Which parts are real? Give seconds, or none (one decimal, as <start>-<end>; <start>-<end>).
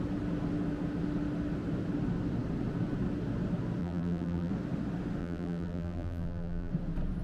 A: 0.0-3.8; 4.5-5.2; 6.7-7.2